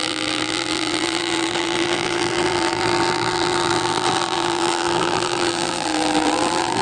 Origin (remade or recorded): remade